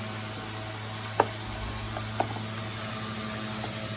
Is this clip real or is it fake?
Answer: real